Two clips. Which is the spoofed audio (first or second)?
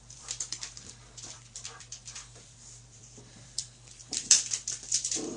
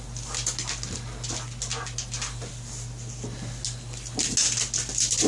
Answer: first